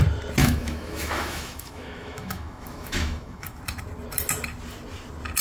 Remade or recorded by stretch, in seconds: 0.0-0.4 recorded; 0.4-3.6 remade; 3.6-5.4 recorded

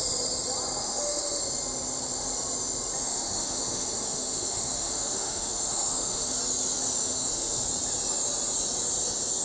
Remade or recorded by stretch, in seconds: 0.0-0.8 recorded; 0.8-1.4 remade; 1.4-3.0 recorded; 3.0-6.4 remade; 6.4-7.0 recorded; 7.0-7.6 remade; 7.6-9.4 recorded

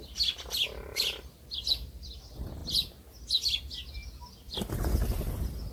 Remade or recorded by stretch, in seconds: 0.0-5.7 recorded

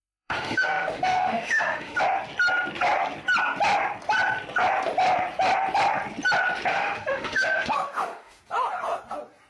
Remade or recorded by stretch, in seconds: 0.0-2.0 remade; 2.0-6.7 recorded; 6.7-8.4 remade; 8.4-9.5 recorded

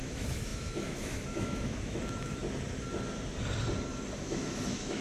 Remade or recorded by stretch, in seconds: 0.0-2.4 remade; 2.4-4.2 recorded; 4.2-5.0 remade

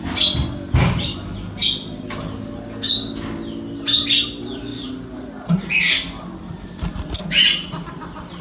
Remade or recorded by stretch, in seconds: 0.0-8.4 recorded

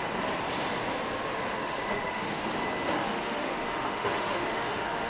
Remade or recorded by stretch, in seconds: 0.0-1.6 recorded; 1.6-2.4 remade; 2.4-3.0 recorded; 3.0-5.1 remade